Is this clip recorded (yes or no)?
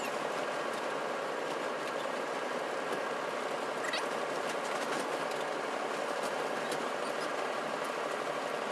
yes